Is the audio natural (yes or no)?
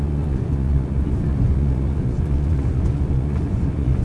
no